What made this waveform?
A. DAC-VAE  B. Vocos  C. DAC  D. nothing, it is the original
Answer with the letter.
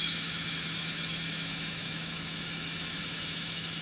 A